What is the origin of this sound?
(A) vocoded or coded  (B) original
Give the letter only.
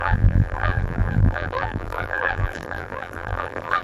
A